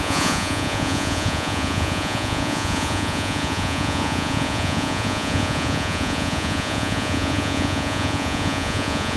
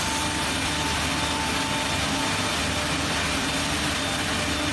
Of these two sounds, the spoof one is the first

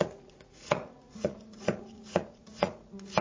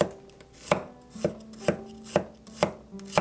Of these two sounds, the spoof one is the first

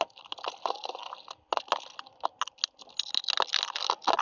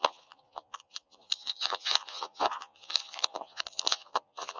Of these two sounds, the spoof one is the second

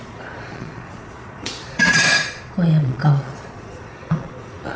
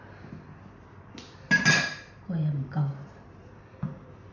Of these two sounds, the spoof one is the first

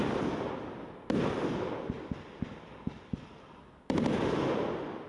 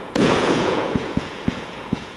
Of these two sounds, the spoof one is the second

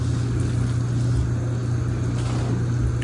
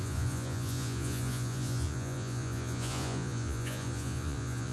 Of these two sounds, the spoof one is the second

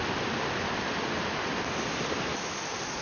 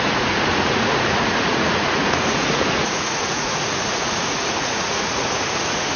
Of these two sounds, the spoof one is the second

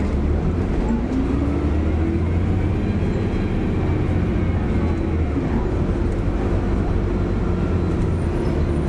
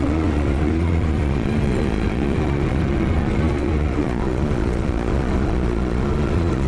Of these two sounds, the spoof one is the second